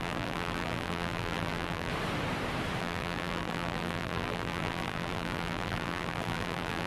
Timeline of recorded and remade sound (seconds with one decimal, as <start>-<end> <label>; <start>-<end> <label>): 0.0-1.9 remade; 1.9-2.8 recorded; 2.8-6.9 remade